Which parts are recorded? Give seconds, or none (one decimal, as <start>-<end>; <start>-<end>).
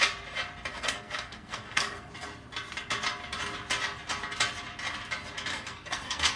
0.0-0.7; 2.1-5.5